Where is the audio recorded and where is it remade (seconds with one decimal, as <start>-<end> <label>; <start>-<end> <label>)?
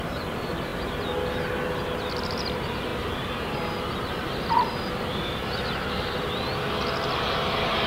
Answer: 0.0-7.9 recorded